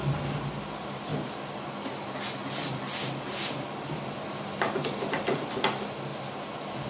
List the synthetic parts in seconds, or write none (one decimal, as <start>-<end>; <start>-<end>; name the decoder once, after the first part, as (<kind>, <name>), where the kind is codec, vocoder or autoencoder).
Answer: none